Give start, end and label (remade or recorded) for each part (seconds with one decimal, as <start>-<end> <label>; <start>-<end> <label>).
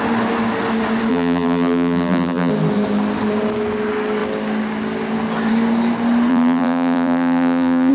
0.0-1.1 recorded; 1.1-2.5 remade; 2.5-6.3 recorded; 6.3-7.9 remade